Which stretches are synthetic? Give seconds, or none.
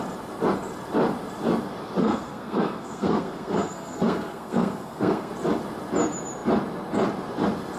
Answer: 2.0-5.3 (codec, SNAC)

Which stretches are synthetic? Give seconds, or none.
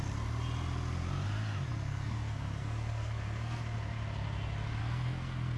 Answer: 1.7-3.6 (codec, SNAC); 4.8-5.6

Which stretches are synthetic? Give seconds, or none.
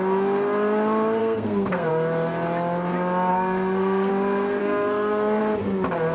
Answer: 1.2-1.9 (codec, SNAC); 3.3-4.1; 4.6-5.4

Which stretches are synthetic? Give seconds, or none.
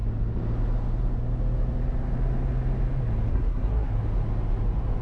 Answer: 3.3-3.9 (codec, SNAC)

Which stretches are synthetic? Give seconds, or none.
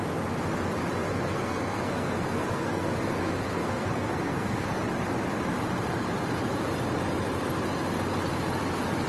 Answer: 1.1-4.8 (codec, SNAC)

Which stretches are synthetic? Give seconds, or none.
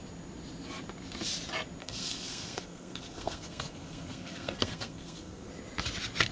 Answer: 1.8-5.5 (codec, SNAC)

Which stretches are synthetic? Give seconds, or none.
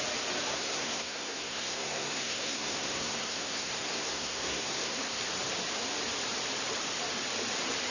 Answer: 0.5-5.2 (codec, SNAC)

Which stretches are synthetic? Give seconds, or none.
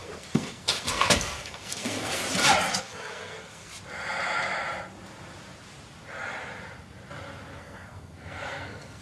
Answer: 0.0-2.2 (codec, SNAC); 2.8-3.7; 7.5-9.0